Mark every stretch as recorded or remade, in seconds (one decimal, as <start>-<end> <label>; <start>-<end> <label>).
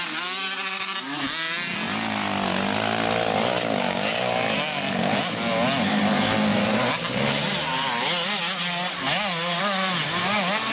0.0-10.7 recorded